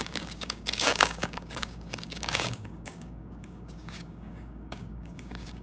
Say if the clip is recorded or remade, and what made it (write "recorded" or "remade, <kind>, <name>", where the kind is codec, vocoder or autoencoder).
remade, codec, DAC